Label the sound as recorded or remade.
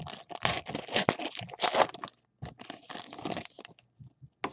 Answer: recorded